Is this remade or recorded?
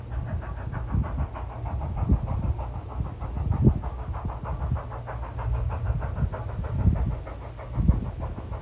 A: recorded